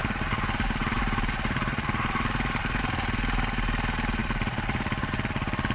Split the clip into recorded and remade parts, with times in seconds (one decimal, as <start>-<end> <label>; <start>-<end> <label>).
0.0-0.8 recorded; 0.8-2.8 remade; 2.8-4.2 recorded; 4.2-5.1 remade; 5.1-5.7 recorded